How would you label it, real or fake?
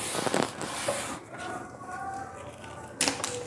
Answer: real